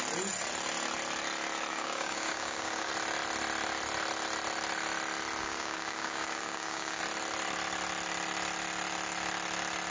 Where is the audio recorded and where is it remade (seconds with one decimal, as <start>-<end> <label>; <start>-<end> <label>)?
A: 0.0-1.7 recorded; 1.7-2.9 remade; 2.9-5.4 recorded; 5.4-7.0 remade; 7.0-9.9 recorded